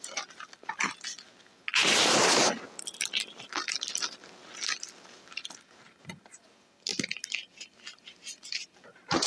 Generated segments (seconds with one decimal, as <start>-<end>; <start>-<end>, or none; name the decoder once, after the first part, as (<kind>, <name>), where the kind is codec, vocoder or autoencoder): none